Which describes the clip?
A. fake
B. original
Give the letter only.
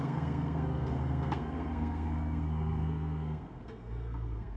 A